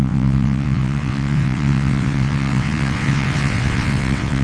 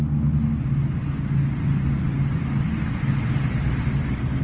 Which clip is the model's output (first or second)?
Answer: first